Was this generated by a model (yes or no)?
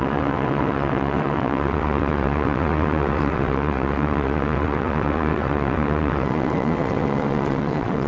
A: yes